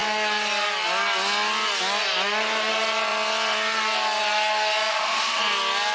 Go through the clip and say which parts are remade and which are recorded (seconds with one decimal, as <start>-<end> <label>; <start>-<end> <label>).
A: 0.0-4.9 recorded; 4.9-5.4 remade; 5.4-5.9 recorded

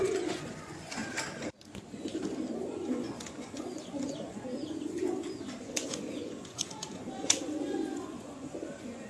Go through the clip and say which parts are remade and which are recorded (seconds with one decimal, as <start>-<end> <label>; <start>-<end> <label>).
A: 0.0-1.0 remade; 1.0-2.7 recorded; 2.7-5.0 remade; 5.0-5.6 recorded; 5.6-9.1 remade

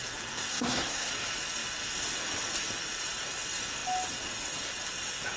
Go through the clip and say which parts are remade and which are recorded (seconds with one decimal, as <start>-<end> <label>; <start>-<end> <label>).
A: 0.0-0.5 recorded; 0.5-1.1 remade; 1.1-5.4 recorded